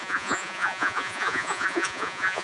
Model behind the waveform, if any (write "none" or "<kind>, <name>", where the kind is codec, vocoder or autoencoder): vocoder, Vocos